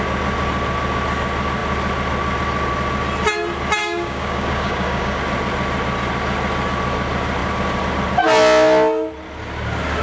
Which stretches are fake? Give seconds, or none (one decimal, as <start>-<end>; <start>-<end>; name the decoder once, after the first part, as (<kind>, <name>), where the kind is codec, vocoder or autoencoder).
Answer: 3.8-5.2 (codec, DAC)